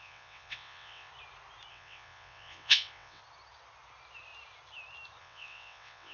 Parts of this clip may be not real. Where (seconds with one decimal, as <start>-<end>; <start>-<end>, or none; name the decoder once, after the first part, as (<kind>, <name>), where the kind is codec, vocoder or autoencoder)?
0.0-1.1 (vocoder, WaveNeXt); 1.7-3.2; 5.2-6.1